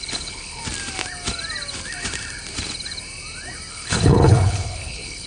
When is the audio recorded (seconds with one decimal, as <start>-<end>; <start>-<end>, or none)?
0.6-3.7